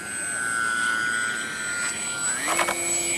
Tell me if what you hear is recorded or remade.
recorded